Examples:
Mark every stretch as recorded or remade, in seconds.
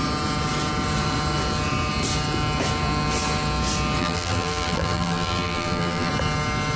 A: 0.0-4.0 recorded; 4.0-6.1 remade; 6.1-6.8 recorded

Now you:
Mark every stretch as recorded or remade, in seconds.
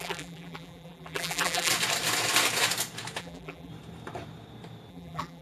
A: 0.0-1.7 remade; 1.7-3.2 recorded; 3.2-3.7 remade; 3.7-4.9 recorded; 4.9-5.4 remade